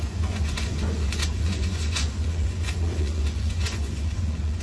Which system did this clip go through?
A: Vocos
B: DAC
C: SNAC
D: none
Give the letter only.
A